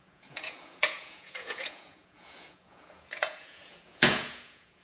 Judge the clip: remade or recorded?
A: remade